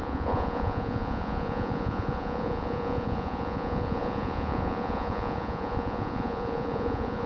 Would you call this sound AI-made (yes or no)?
yes